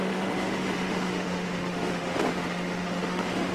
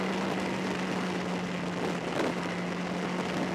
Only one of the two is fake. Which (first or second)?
first